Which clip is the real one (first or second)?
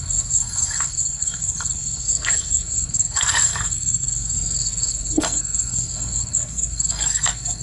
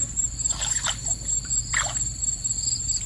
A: second